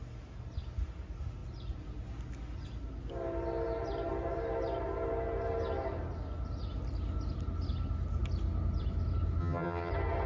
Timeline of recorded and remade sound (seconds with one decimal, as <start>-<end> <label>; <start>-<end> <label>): 0.0-9.4 recorded; 9.4-9.9 remade; 9.9-10.3 recorded